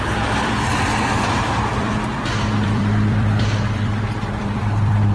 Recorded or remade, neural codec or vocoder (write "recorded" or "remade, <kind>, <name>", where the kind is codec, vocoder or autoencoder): remade, vocoder, BigVGAN v2